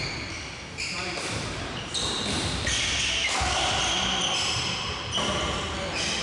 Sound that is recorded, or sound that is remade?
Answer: recorded